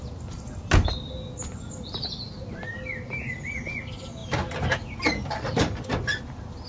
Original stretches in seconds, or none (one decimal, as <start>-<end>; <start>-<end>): 0.0-6.7